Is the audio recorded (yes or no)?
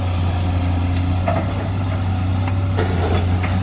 yes